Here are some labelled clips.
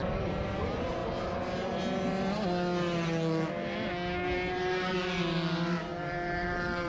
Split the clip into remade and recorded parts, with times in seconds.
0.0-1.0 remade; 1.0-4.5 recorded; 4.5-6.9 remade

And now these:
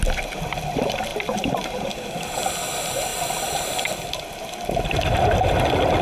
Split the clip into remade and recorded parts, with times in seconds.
0.0-1.1 recorded; 1.1-1.9 remade; 1.9-6.0 recorded

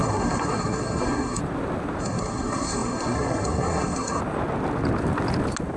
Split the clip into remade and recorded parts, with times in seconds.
0.0-1.4 remade; 1.4-2.0 recorded; 2.0-4.2 remade; 4.2-5.8 recorded

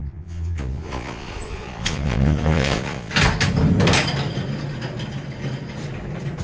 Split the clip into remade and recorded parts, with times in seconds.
0.0-3.1 remade; 3.1-6.4 recorded

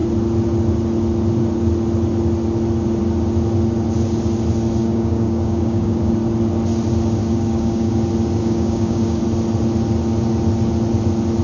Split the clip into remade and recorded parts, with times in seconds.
0.0-4.8 recorded; 4.8-6.1 remade; 6.1-7.2 recorded; 7.2-7.9 remade; 7.9-8.4 recorded; 8.4-9.2 remade; 9.2-11.4 recorded

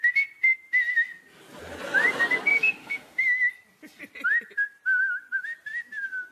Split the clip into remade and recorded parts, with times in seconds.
0.0-2.5 recorded; 2.5-3.5 remade; 3.5-6.3 recorded

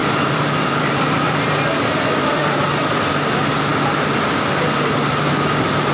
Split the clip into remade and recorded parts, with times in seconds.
0.0-3.1 remade; 3.1-5.9 recorded

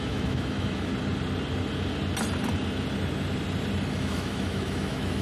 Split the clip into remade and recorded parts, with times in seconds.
0.0-0.9 remade; 0.9-3.9 recorded; 3.9-5.2 remade